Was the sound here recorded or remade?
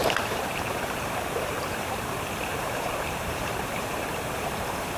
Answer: remade